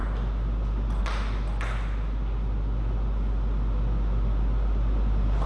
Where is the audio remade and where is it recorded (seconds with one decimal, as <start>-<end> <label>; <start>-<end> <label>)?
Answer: 0.0-5.5 recorded